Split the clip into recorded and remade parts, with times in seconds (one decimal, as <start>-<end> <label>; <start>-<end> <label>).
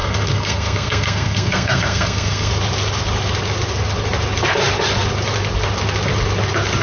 0.0-2.5 remade; 2.5-6.8 recorded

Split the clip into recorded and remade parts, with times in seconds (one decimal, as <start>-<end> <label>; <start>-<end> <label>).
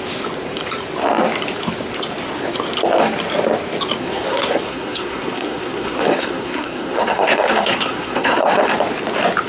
0.0-4.0 recorded; 4.0-8.6 remade; 8.6-9.5 recorded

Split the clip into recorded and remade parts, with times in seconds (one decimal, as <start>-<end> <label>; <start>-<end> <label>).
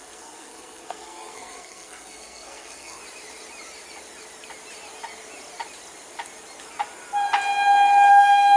0.0-3.0 remade; 3.0-8.1 recorded; 8.1-8.6 remade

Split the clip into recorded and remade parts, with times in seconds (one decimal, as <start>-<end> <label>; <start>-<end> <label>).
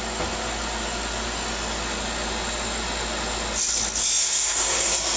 0.0-4.2 recorded; 4.2-5.2 remade